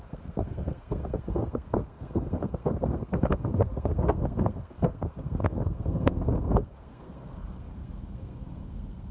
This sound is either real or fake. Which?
fake